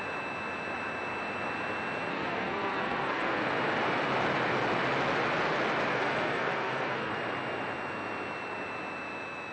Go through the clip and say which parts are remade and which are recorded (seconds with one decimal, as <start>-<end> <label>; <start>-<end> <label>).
0.0-2.1 recorded; 2.1-3.5 remade; 3.5-5.9 recorded; 5.9-7.1 remade; 7.1-9.5 recorded